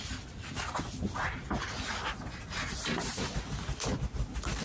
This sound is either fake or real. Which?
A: real